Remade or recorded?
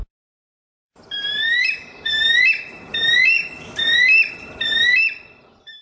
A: remade